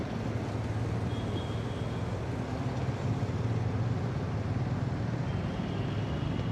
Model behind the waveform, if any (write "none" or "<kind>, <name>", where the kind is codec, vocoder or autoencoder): none